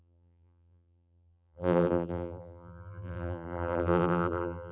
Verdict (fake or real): fake